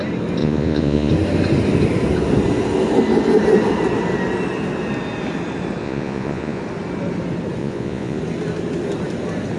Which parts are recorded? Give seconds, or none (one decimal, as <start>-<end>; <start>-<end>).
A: 0.0-0.4; 1.1-5.8; 6.6-7.6; 8.2-9.6